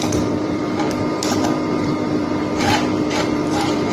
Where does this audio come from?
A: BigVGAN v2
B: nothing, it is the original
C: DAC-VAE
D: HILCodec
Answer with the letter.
A